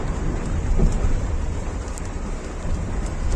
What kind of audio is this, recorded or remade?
remade